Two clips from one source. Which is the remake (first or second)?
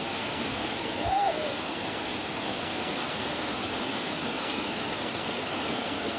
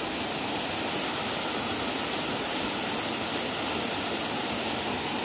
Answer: first